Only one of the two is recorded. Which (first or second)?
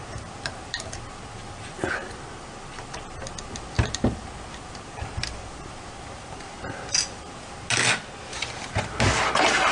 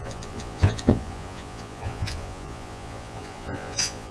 first